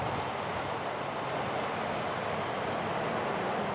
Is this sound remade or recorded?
recorded